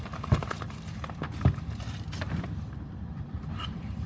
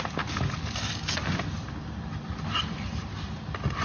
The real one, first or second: second